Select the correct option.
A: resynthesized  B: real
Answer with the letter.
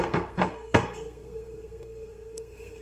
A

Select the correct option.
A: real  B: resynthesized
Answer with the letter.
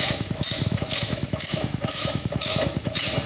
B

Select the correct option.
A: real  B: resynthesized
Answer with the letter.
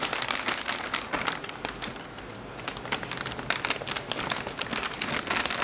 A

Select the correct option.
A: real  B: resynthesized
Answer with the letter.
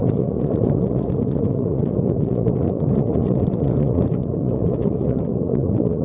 B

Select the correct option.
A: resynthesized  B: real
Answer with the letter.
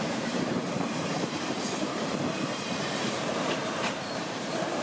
A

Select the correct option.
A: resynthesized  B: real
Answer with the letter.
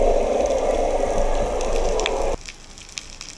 B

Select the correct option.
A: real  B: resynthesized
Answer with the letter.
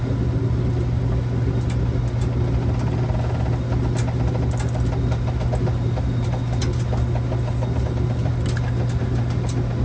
A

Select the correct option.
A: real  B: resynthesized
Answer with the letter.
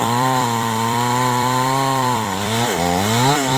B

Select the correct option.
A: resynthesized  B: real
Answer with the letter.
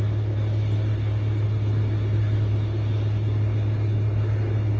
B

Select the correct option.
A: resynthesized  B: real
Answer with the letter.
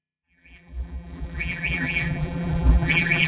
A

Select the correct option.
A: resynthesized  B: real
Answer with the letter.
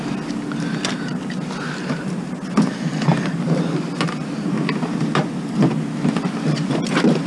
B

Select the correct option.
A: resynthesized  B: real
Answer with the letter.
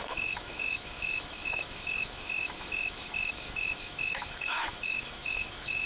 A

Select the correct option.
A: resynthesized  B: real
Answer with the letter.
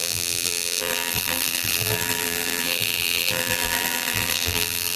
A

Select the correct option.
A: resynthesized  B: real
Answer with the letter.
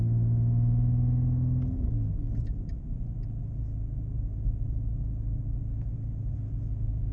B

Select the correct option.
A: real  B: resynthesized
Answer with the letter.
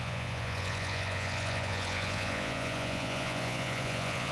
B